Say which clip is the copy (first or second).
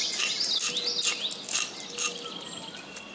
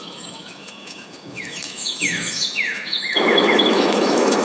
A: second